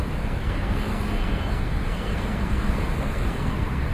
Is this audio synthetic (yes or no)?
yes